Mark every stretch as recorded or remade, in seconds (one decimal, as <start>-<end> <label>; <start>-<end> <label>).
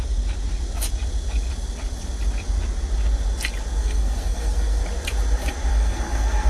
0.0-3.8 recorded; 3.8-4.8 remade; 4.8-5.7 recorded; 5.7-6.5 remade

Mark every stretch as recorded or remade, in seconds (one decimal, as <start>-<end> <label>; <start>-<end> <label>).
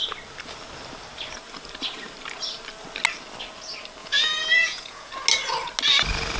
0.0-4.0 recorded; 4.0-5.1 remade; 5.1-6.4 recorded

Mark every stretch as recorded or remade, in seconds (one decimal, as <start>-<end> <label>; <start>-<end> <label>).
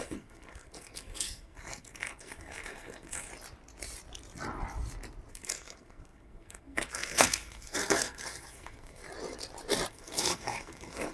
0.0-3.3 remade; 3.3-5.3 recorded; 5.3-9.0 remade; 9.0-9.9 recorded; 9.9-11.1 remade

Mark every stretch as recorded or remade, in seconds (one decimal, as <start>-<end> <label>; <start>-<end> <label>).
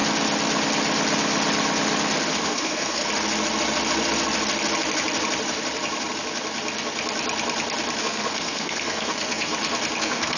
0.0-2.4 recorded; 2.4-3.0 remade; 3.0-8.0 recorded; 8.0-9.5 remade; 9.5-10.0 recorded; 10.0-10.4 remade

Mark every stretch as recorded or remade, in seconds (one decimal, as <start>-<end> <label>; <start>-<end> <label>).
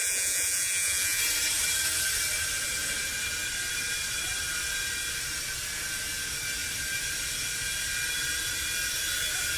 0.0-1.2 remade; 1.2-9.6 recorded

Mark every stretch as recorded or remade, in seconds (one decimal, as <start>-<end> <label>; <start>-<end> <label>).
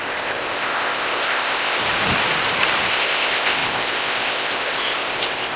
0.0-1.8 remade; 1.8-2.9 recorded; 2.9-5.6 remade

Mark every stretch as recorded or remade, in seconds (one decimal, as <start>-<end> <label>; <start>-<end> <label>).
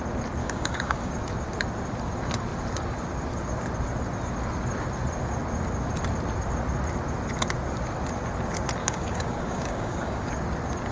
0.0-0.4 recorded; 0.4-1.1 remade; 1.1-8.8 recorded; 8.8-10.3 remade; 10.3-10.9 recorded